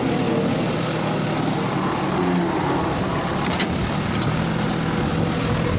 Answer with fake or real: real